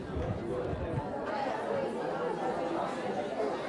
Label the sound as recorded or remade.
recorded